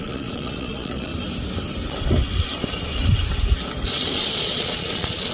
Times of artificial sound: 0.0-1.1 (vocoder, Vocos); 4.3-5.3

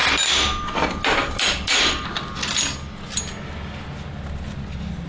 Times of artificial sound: 0.0-2.1 (vocoder, BigVGAN v2)